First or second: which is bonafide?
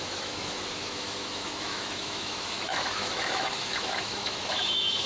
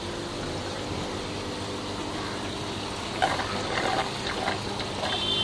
second